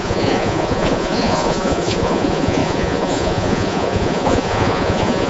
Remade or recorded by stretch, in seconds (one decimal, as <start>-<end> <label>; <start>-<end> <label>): 0.0-5.3 remade